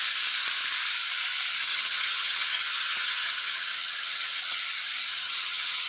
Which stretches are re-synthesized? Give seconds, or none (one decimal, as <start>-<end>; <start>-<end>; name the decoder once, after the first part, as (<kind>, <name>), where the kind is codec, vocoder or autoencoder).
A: 1.7-4.6 (vocoder, HiFi-GAN); 5.1-5.9